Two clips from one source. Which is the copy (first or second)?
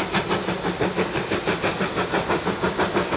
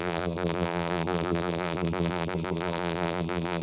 second